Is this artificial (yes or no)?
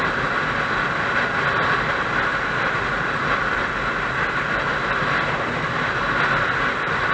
no